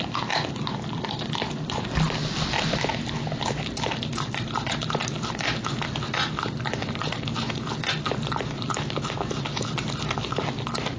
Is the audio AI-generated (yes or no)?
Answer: no